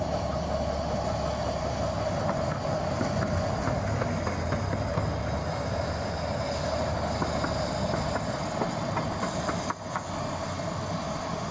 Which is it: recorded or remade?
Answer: recorded